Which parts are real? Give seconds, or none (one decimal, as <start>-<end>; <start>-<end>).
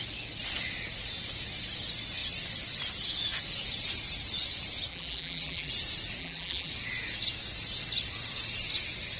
0.0-4.9; 5.7-6.2; 6.7-9.2